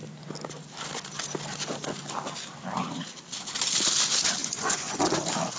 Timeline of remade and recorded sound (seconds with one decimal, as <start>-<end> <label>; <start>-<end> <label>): 0.0-4.4 recorded; 4.4-5.0 remade; 5.0-5.6 recorded